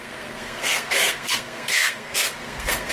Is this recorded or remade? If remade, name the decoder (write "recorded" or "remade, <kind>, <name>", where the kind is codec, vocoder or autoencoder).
remade, codec, SNAC